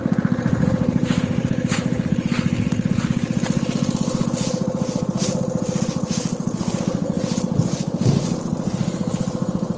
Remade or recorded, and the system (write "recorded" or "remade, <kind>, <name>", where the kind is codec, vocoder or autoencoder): recorded